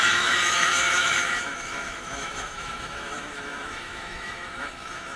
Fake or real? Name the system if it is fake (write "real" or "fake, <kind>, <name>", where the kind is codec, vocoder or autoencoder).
fake, autoencoder, DAC-VAE